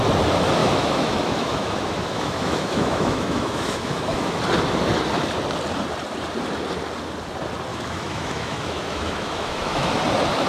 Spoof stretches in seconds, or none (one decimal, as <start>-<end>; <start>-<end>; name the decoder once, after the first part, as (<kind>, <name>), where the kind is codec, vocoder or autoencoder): 0.6-4.4 (autoencoder, DAC-VAE); 7.7-10.0